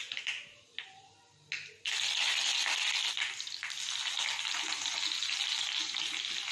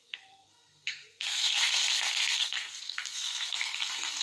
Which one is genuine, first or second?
first